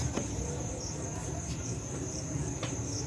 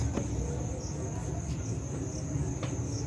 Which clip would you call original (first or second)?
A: second